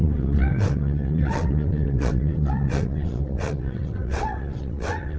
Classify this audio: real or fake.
fake